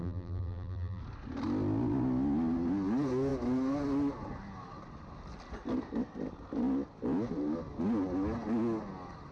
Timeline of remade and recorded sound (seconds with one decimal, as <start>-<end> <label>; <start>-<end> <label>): 0.0-1.0 remade; 1.0-9.3 recorded